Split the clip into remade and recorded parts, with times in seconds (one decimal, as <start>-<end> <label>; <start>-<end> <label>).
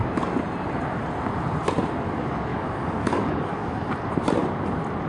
0.0-2.5 recorded; 2.5-3.9 remade; 3.9-5.1 recorded